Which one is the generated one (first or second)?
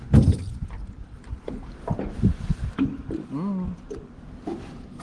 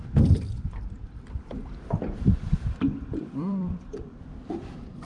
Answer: second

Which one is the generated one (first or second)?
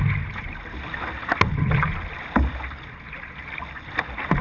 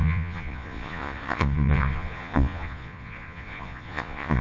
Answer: second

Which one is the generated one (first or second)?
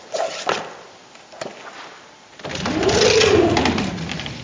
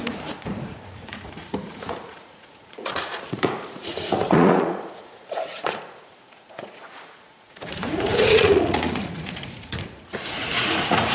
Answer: second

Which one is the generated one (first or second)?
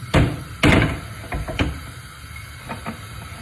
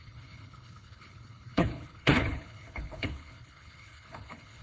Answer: second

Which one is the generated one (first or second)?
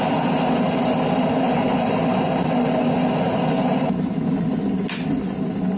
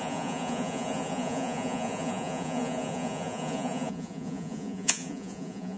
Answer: second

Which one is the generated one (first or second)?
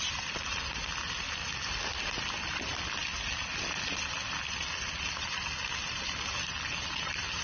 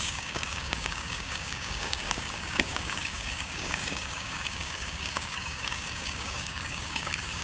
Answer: second